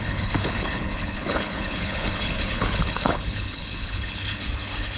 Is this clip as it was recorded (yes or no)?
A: no